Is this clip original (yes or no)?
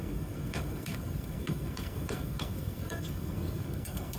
no